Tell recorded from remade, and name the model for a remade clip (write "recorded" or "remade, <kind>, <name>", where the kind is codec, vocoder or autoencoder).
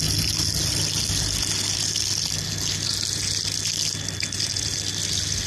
recorded